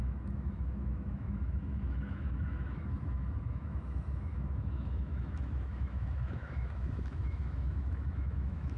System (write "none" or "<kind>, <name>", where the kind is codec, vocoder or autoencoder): autoencoder, DAC-VAE